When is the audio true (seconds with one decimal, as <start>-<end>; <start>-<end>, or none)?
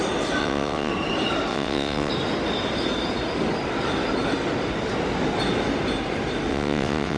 0.0-0.4; 0.9-1.5; 2.1-6.5